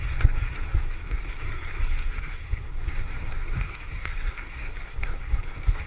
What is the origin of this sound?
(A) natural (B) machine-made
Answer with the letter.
B